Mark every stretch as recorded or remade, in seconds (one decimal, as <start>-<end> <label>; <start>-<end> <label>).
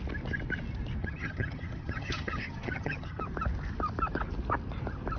0.0-1.0 recorded; 1.0-3.2 remade; 3.2-5.2 recorded